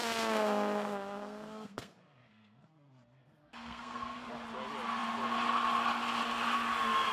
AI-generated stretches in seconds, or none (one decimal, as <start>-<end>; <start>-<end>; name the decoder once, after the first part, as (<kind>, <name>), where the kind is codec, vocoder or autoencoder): 0.0-4.3 (codec, SNAC)